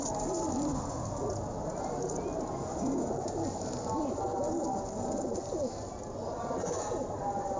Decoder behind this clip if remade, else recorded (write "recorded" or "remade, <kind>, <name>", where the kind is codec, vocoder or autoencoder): recorded